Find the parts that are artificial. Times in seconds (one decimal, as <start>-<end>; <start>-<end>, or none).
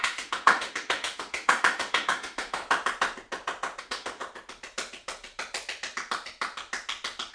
0.0-2.6; 3.8-4.2